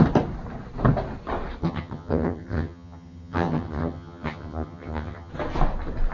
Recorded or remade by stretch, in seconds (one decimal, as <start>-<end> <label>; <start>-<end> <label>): 0.0-1.6 recorded; 1.6-5.3 remade; 5.3-6.1 recorded